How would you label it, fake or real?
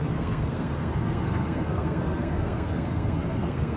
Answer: fake